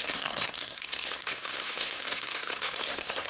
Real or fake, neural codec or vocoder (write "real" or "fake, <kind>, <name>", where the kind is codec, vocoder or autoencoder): fake, codec, SNAC